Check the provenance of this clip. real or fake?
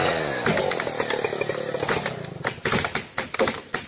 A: real